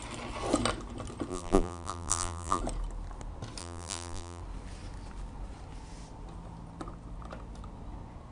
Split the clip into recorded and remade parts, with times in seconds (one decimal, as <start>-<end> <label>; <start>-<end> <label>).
0.0-1.3 recorded; 1.3-2.6 remade; 2.6-3.6 recorded; 3.6-4.4 remade; 4.4-8.3 recorded